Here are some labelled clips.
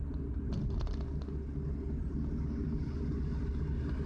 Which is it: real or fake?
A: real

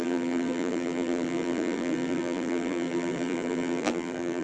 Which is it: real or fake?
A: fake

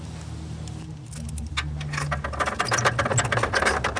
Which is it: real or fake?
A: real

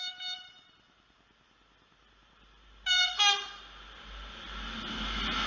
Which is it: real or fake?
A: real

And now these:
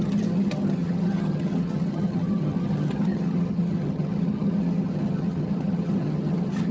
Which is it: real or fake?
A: fake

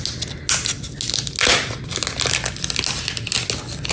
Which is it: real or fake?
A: real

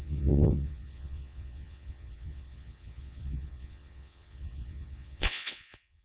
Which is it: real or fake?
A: fake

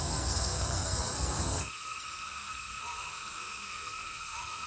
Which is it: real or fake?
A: fake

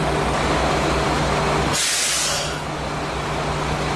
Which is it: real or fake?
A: real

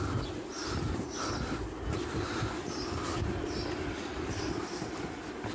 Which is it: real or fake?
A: real